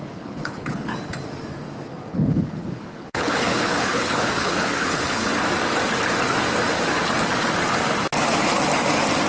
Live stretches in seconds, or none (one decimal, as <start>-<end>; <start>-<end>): 0.9-2.1; 5.3-9.3